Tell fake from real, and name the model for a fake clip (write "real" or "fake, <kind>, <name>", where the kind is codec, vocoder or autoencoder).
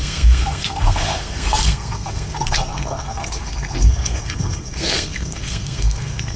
fake, codec, SNAC